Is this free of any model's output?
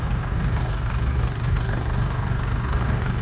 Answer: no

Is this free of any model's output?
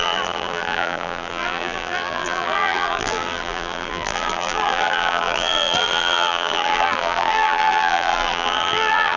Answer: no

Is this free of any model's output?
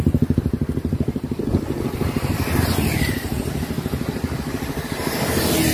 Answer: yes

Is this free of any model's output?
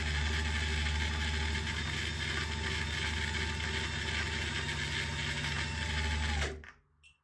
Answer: yes